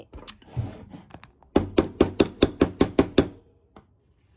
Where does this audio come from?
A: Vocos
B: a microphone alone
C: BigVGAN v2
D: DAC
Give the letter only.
B